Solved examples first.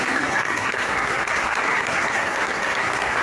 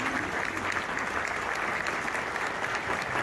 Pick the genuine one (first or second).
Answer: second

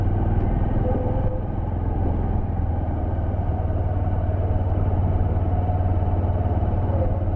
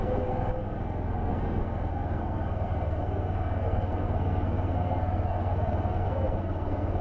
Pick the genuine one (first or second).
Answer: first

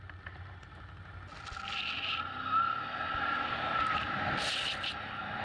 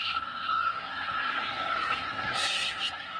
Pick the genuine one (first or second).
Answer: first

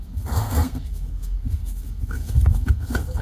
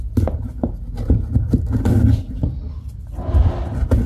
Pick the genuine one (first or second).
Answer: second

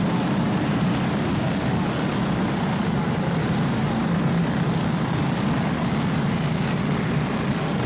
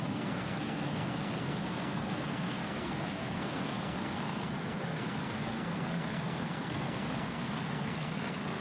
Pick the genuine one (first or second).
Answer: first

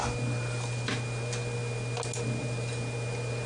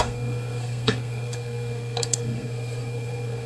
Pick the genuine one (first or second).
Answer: first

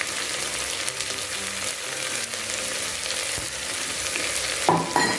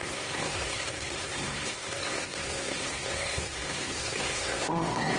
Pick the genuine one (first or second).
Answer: first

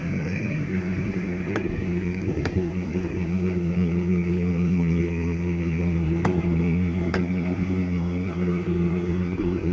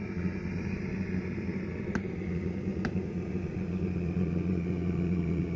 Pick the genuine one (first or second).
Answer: second